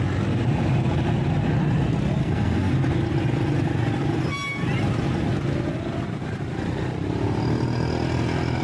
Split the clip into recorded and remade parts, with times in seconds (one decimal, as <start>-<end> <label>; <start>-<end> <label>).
0.0-2.2 recorded; 2.2-2.7 remade; 2.7-8.6 recorded